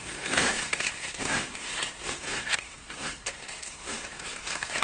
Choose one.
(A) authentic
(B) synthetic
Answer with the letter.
B